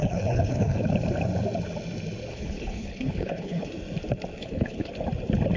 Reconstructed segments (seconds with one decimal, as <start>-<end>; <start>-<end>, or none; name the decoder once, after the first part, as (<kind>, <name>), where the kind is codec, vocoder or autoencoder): 0.0-0.9 (codec, HILCodec); 2.3-3.7; 4.4-4.9